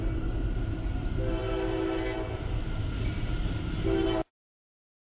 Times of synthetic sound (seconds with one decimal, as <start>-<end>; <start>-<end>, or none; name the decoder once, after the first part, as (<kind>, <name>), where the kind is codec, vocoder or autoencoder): none